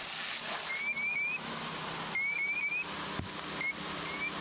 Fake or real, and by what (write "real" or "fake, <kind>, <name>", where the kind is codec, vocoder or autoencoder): real